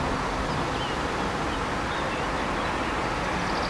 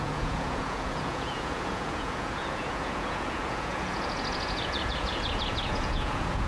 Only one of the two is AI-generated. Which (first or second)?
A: second